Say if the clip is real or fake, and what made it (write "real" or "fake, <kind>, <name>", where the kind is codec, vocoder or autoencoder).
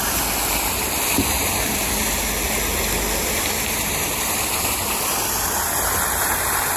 real